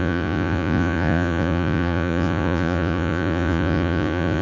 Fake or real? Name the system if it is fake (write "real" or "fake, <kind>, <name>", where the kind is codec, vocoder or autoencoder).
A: fake, vocoder, Vocos